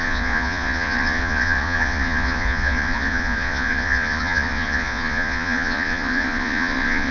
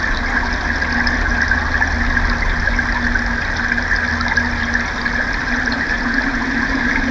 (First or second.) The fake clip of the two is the first